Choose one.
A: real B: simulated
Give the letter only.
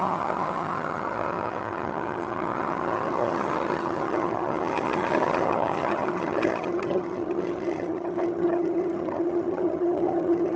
B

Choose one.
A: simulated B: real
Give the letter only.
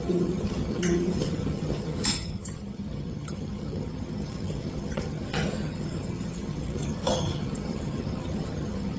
A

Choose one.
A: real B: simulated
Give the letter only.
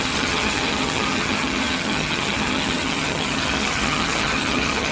B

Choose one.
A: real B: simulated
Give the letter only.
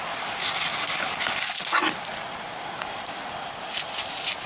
A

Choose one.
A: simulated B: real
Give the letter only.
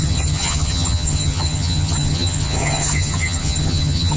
A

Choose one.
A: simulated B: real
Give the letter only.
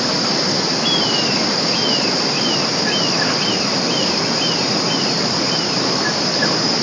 B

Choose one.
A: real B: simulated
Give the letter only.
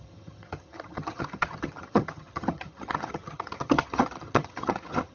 B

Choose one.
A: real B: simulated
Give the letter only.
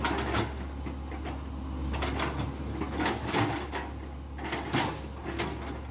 A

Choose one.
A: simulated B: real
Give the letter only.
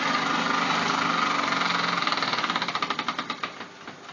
B